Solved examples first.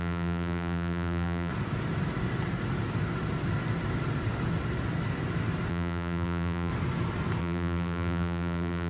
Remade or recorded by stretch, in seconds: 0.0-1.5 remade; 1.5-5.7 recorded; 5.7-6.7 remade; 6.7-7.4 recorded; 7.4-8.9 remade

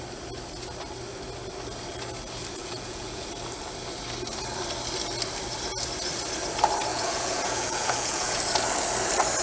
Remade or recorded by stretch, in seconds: 0.0-2.6 recorded; 2.6-3.3 remade; 3.3-6.9 recorded; 6.9-8.4 remade; 8.4-9.4 recorded

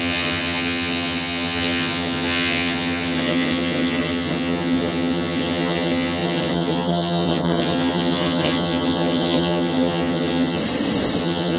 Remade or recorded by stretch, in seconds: 0.0-10.6 remade; 10.6-11.2 recorded; 11.2-11.6 remade

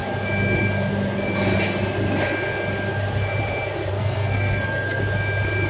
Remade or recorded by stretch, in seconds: 0.0-3.9 recorded; 3.9-5.0 remade; 5.0-5.7 recorded

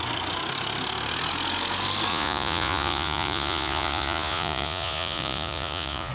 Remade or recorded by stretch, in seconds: 0.0-2.1 recorded; 2.1-6.1 remade

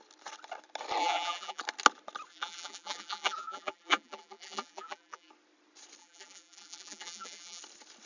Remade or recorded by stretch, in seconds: 0.0-1.0 recorded; 1.0-1.6 remade; 1.6-2.3 recorded; 2.3-5.3 remade; 5.3-6.0 recorded; 6.0-7.6 remade; 7.6-8.1 recorded